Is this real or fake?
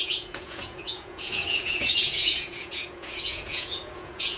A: fake